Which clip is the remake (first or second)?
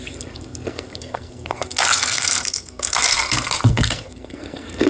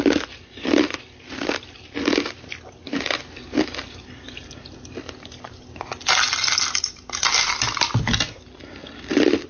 first